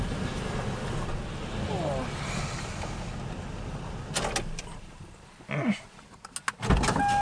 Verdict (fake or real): real